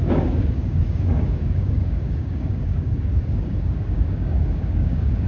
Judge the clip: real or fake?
fake